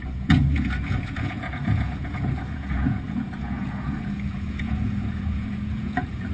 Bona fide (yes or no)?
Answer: no